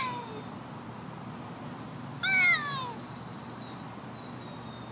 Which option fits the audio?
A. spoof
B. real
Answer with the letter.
B